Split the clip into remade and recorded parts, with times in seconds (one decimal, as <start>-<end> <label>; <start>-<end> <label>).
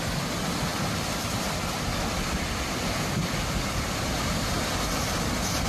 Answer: 0.0-5.7 recorded